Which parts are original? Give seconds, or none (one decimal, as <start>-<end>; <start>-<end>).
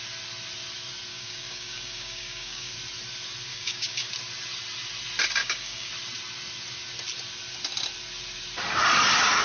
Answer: 0.0-1.1; 2.7-3.5; 4.1-5.4; 5.9-9.4